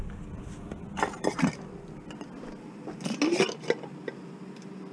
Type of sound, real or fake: real